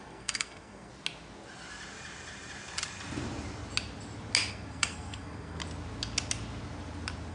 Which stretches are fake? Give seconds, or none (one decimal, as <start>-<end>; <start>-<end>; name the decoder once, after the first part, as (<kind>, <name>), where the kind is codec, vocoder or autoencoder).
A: 0.0-0.9 (codec, SNAC); 4.5-5.6